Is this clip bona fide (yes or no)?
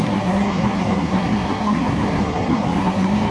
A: no